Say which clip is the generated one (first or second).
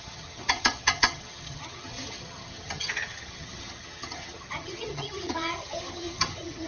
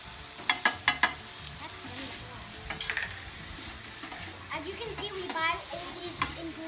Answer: first